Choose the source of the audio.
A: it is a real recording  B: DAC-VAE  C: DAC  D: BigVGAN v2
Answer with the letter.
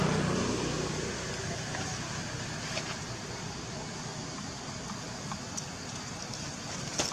A